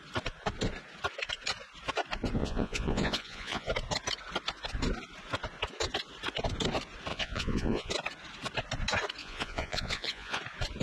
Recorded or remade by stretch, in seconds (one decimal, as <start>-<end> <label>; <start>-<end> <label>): 0.0-2.4 recorded; 2.4-3.7 remade; 3.7-7.1 recorded; 7.1-7.9 remade; 7.9-9.2 recorded; 9.2-10.4 remade; 10.4-10.8 recorded